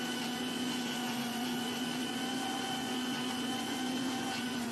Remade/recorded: remade